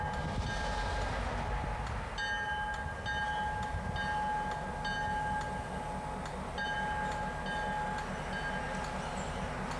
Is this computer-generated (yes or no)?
no